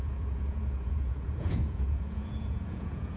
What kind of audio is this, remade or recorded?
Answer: remade